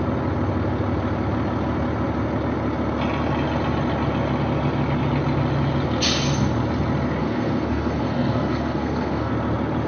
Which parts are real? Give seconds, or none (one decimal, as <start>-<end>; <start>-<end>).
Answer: 0.0-7.2; 9.3-9.9